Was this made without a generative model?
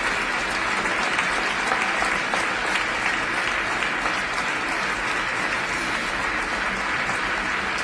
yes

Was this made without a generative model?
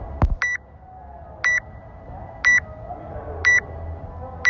yes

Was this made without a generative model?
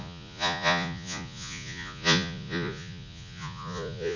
no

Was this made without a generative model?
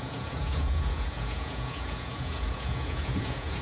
no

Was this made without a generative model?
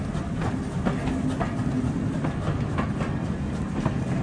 yes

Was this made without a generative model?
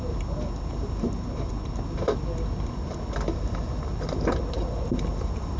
yes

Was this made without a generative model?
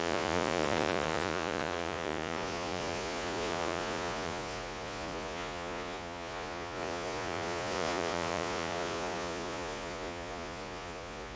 no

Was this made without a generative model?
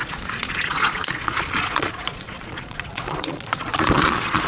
no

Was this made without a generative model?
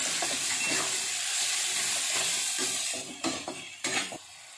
yes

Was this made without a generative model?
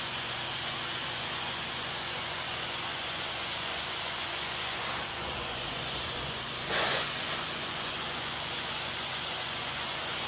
no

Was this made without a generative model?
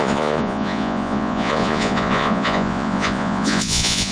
no